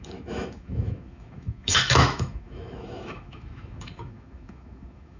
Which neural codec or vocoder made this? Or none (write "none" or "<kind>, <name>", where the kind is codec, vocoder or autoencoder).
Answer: autoencoder, DAC-VAE